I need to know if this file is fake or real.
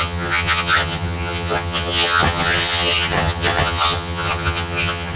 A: fake